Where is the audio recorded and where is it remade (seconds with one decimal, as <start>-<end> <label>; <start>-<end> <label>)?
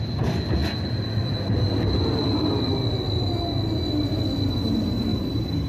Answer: 0.0-5.7 recorded